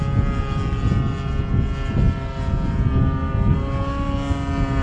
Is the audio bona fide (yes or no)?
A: yes